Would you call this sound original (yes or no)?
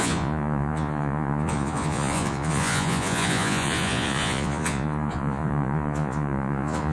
no